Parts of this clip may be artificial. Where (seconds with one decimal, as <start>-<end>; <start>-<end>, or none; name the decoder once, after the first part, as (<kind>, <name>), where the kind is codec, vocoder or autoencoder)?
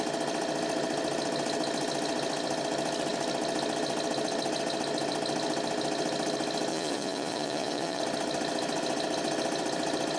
6.7-8.0 (vocoder, Vocos)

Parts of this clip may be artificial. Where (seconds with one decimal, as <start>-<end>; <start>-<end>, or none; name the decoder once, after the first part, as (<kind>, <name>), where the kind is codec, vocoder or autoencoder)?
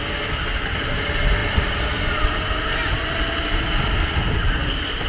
none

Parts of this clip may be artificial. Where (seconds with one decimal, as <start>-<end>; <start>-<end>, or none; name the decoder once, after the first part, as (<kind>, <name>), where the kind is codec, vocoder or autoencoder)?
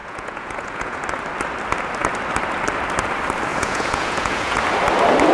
0.0-1.0 (vocoder, Vocos); 3.5-4.6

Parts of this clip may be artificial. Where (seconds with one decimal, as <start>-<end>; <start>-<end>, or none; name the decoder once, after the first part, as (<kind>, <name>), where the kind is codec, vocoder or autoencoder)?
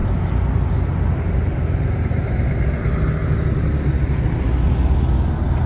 none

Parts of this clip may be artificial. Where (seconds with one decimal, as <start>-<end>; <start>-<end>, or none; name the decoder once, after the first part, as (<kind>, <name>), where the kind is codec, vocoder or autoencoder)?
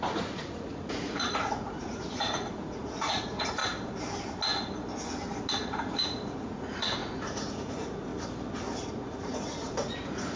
0.0-3.6 (vocoder, Vocos); 5.5-8.1; 8.9-10.4